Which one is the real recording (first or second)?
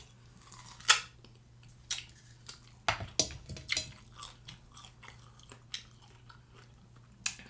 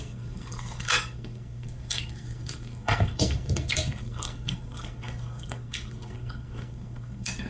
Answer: first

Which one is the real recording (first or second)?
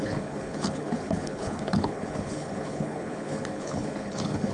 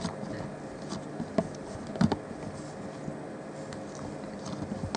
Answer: second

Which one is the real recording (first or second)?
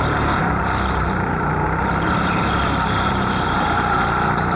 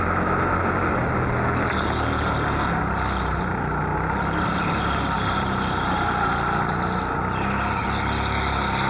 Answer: second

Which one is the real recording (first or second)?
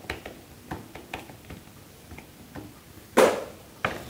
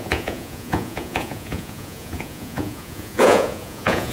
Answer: first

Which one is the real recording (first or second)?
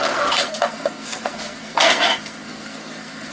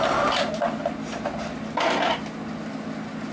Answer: second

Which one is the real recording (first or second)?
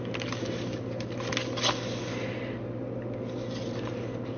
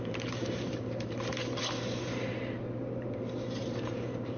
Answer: first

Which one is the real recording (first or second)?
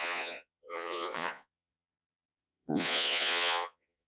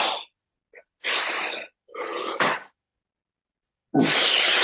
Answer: second